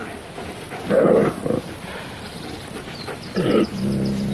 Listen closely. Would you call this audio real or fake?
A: real